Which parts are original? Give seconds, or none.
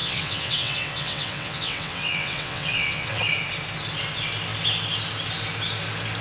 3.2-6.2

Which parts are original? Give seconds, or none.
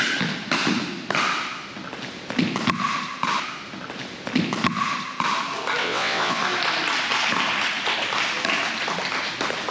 0.0-5.8; 6.4-9.7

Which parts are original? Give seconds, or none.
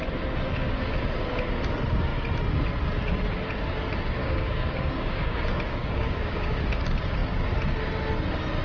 0.0-4.2; 6.6-8.6